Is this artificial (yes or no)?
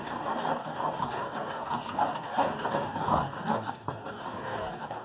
yes